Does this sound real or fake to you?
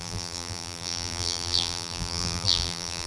fake